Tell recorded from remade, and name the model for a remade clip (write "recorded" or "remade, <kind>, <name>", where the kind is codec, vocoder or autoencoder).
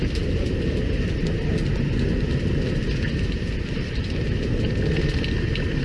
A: recorded